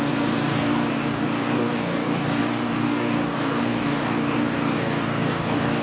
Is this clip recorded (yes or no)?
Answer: no